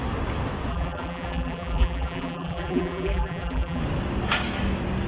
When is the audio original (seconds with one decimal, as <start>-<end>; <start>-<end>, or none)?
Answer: 0.0-0.7; 3.8-5.1